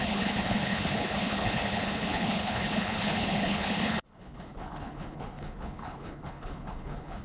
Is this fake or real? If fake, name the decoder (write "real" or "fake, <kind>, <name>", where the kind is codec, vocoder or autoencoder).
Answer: fake, codec, HILCodec